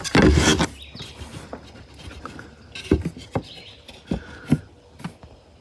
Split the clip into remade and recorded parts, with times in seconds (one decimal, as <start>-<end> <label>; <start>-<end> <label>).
0.0-5.6 recorded